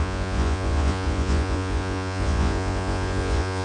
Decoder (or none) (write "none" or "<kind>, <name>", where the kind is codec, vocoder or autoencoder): vocoder, Vocos